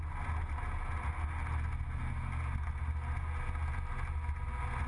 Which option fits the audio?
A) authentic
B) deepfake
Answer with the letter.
A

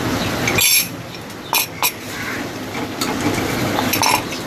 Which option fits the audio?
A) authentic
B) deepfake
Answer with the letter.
A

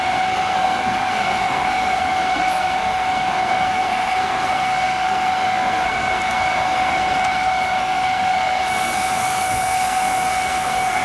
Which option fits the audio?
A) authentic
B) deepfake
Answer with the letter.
B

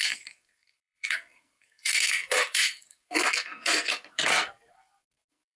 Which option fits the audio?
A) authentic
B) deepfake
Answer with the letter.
B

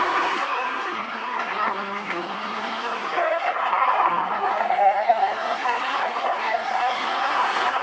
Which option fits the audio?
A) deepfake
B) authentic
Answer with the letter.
A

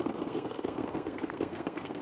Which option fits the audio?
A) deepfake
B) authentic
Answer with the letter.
A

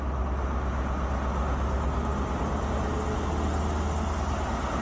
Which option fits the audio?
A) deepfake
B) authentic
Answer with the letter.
B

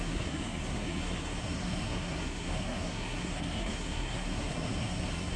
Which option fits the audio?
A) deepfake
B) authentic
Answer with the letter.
A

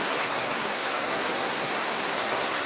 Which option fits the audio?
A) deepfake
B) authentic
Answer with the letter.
A